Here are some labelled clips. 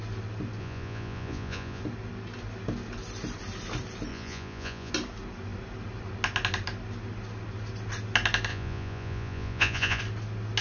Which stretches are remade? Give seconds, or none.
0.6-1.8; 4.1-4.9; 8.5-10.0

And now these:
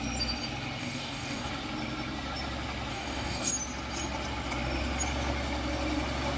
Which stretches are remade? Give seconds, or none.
0.8-1.5; 2.9-3.5

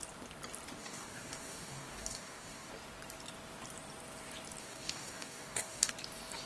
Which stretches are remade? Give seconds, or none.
0.8-2.7; 4.6-5.9

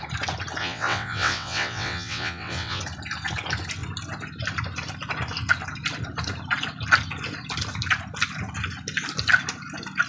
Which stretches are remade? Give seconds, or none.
0.6-2.8

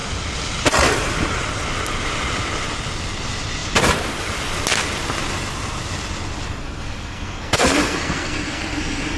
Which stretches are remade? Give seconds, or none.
6.6-9.2

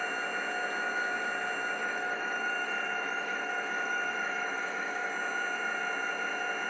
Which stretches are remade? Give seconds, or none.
1.8-5.1